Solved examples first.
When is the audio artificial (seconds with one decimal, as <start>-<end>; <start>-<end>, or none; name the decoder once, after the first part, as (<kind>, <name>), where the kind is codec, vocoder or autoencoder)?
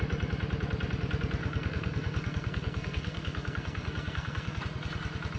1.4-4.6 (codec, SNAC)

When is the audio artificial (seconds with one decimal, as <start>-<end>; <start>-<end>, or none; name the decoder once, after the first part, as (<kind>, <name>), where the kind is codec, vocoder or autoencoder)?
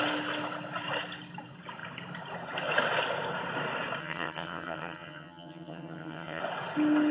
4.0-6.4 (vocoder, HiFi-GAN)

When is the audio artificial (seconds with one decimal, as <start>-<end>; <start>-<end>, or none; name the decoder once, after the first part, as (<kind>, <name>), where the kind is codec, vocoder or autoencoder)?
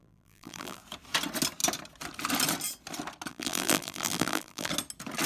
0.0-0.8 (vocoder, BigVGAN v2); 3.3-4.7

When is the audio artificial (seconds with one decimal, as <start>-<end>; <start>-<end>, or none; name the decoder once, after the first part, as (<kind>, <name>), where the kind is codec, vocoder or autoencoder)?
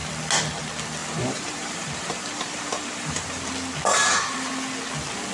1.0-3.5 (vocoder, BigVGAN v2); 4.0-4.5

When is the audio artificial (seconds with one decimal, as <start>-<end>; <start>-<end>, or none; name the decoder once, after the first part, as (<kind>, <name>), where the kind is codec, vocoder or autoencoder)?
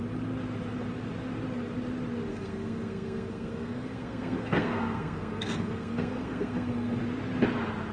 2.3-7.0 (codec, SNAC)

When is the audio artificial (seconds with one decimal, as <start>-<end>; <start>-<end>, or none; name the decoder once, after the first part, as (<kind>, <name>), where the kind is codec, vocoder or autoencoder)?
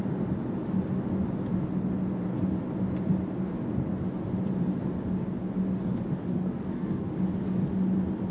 6.3-7.1 (codec, SNAC)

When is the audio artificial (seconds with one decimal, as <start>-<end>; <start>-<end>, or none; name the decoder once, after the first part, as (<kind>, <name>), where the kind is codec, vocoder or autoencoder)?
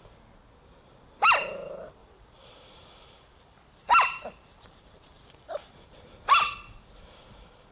2.0-6.2 (vocoder, BigVGAN v2)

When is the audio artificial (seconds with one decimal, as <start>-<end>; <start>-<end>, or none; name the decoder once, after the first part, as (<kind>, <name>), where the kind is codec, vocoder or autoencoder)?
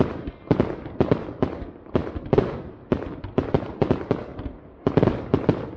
none